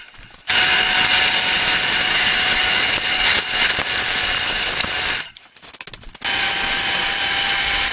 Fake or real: real